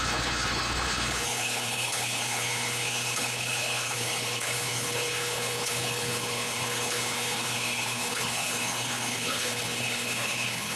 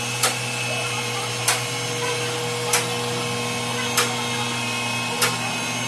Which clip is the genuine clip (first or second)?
second